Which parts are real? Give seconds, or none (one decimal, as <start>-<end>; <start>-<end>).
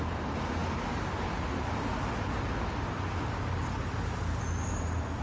0.0-5.2